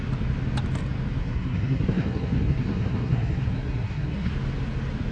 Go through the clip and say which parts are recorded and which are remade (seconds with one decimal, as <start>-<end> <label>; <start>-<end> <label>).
0.0-1.2 recorded; 1.2-4.3 remade; 4.3-5.1 recorded